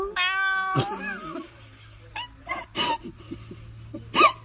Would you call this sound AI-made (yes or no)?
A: no